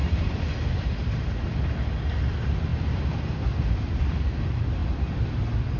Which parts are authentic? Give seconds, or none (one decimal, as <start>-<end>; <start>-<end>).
0.7-2.7; 4.2-4.8